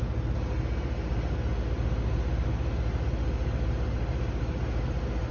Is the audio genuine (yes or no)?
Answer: yes